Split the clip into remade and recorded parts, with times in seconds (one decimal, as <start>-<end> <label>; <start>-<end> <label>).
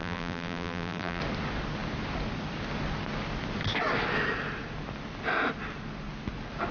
0.0-1.2 remade; 1.2-6.7 recorded